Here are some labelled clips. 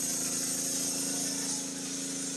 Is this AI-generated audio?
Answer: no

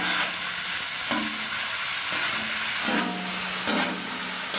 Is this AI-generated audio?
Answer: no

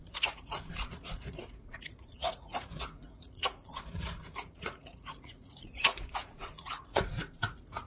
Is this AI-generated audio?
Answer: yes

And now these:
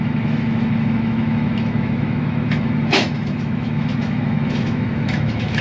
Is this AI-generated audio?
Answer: yes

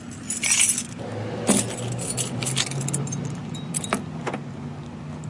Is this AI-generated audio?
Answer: no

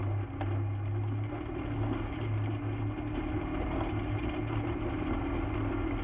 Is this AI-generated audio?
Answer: no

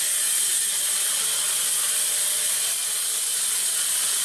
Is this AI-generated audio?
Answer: no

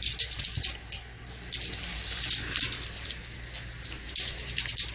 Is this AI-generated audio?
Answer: no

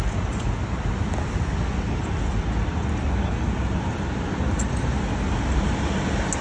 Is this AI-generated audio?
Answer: no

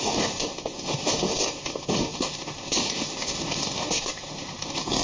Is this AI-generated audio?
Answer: yes